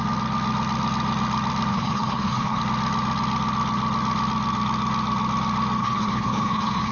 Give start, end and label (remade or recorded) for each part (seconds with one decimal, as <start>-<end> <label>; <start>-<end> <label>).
0.0-1.7 recorded; 1.7-2.6 remade; 2.6-5.8 recorded; 5.8-6.9 remade